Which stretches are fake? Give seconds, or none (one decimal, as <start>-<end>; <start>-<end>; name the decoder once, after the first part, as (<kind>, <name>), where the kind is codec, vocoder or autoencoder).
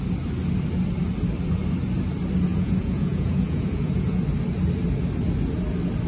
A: 2.5-4.2 (vocoder, Vocos)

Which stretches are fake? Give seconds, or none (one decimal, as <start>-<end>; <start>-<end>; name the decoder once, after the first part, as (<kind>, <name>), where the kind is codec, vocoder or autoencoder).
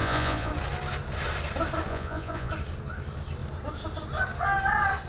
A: 0.0-0.5 (vocoder, Vocos); 1.9-2.5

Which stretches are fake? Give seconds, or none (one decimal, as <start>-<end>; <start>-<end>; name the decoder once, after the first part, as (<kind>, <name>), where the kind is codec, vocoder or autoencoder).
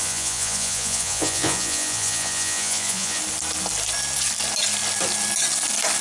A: 0.0-3.2 (vocoder, Vocos)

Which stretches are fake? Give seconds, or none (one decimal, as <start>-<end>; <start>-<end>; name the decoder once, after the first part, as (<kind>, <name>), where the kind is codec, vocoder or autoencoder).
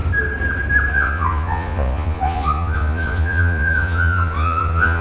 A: 0.9-5.0 (vocoder, Vocos)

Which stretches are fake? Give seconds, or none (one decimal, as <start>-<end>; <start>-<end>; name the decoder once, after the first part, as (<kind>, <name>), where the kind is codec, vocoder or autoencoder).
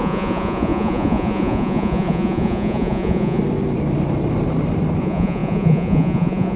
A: 0.0-3.4 (vocoder, Vocos); 5.0-6.6